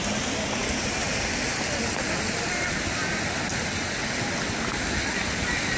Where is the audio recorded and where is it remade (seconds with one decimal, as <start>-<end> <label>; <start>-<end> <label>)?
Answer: 0.0-5.8 recorded